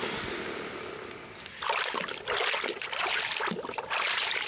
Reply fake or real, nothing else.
real